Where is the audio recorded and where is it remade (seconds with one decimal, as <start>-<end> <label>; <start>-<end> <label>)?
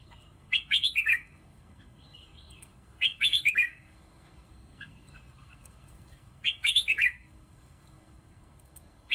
0.0-9.1 remade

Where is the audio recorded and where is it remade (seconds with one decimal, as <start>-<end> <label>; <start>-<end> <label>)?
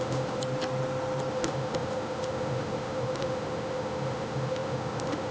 0.0-0.4 remade; 0.4-1.3 recorded; 1.3-5.3 remade